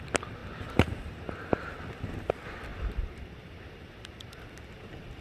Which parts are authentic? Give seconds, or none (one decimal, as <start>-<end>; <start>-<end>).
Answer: 0.0-0.4; 2.3-2.7; 4.6-5.2